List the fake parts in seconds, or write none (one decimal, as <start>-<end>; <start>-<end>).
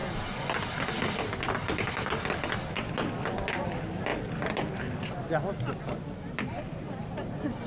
none